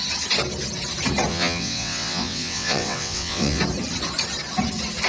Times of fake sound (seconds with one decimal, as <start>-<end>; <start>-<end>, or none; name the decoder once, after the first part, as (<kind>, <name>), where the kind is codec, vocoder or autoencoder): 1.3-3.6 (vocoder, WaveNeXt)